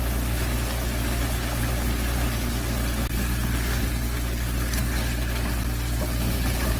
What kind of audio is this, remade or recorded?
recorded